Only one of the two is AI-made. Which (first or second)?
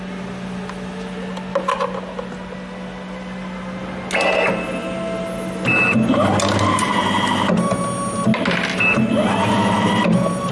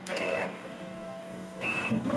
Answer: second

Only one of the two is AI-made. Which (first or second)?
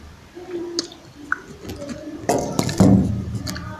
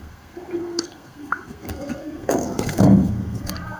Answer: second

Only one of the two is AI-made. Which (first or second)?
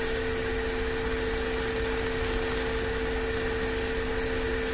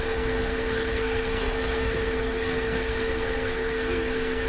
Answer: second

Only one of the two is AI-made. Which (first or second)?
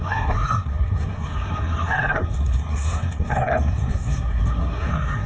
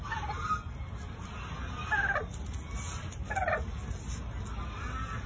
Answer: first